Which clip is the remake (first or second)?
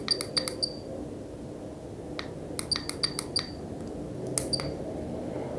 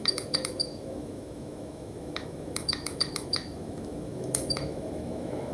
second